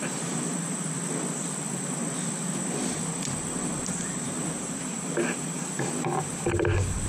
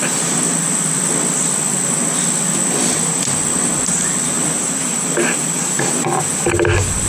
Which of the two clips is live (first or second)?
second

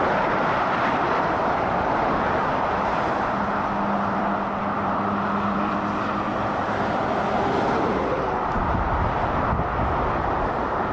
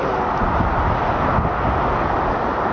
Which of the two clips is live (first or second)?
second